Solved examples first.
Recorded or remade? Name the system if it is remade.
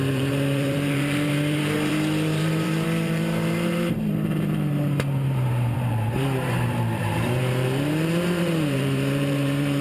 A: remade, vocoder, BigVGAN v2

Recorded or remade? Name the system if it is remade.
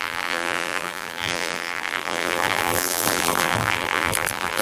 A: remade, vocoder, BigVGAN v2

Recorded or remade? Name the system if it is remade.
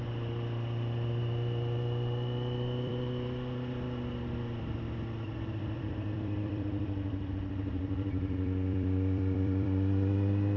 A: remade, vocoder, BigVGAN v2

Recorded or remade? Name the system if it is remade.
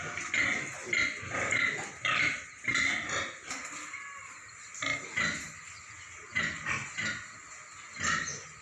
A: recorded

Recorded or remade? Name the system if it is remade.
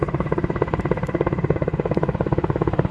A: remade, vocoder, BigVGAN v2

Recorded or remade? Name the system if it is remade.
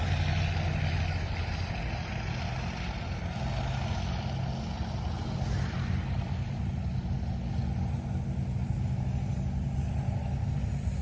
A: recorded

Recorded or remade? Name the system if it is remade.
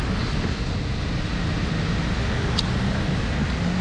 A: recorded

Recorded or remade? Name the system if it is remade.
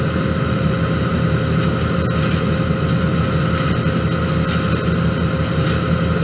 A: recorded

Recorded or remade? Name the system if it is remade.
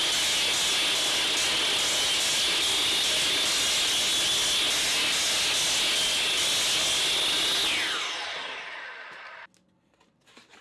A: recorded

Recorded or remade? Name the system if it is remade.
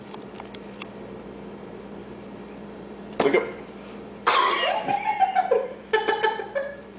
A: remade, vocoder, BigVGAN v2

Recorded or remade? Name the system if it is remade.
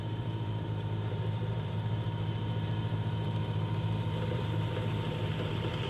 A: remade, vocoder, BigVGAN v2